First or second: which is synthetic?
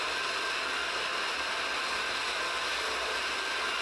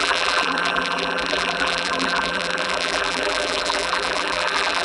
second